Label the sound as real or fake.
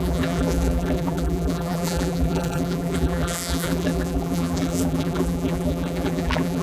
fake